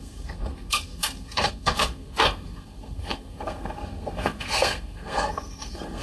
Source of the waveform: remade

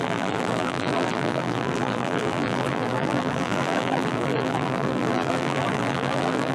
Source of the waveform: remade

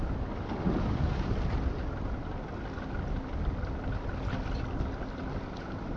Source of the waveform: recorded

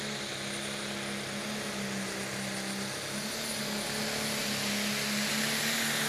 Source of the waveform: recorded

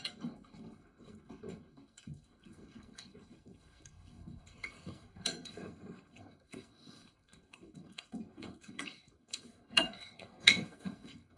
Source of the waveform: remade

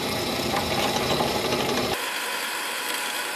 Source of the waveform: remade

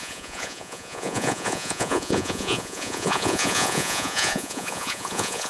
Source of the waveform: remade